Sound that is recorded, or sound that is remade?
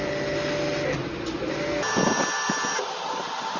recorded